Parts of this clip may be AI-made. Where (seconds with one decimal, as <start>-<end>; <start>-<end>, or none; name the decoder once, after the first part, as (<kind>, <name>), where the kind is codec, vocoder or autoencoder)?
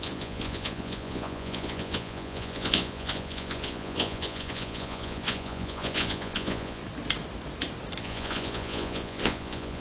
0.0-6.8 (vocoder, Vocos); 8.0-9.8